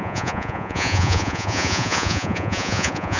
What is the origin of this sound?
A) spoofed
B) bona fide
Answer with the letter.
A